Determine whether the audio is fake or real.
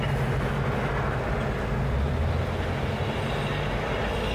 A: real